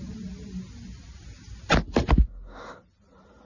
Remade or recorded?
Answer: recorded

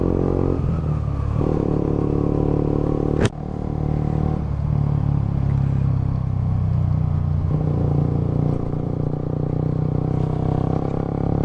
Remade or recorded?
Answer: recorded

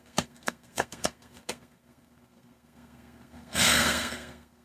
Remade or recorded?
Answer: remade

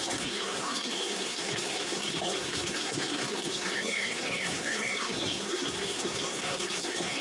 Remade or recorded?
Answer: remade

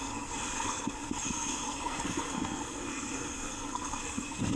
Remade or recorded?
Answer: remade